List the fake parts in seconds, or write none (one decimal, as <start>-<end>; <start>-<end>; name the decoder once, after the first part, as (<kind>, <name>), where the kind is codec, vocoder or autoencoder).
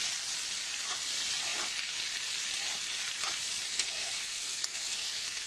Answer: 3.7-5.5 (codec, SNAC)